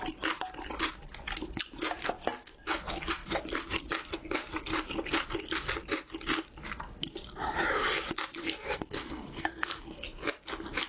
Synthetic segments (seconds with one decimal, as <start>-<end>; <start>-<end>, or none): 8.4-9.9